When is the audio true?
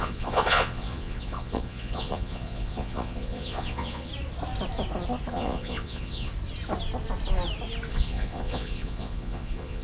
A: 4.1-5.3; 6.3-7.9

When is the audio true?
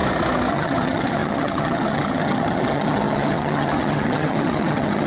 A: 0.0-0.5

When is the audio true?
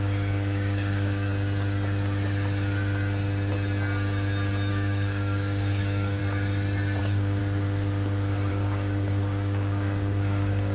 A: 1.3-4.7; 6.2-7.0; 7.4-8.5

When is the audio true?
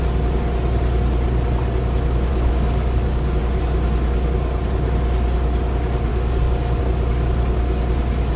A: 0.0-2.3; 3.4-6.1; 6.8-8.4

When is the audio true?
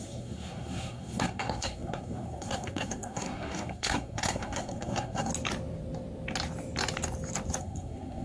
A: 5.3-7.6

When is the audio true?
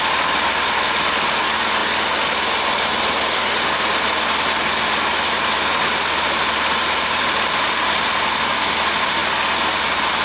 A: 0.0-6.8; 8.3-10.2